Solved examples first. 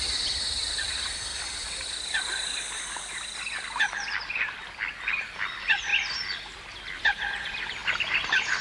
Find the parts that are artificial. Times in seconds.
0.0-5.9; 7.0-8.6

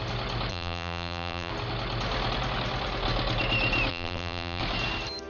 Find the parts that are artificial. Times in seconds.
0.5-1.5; 3.9-4.6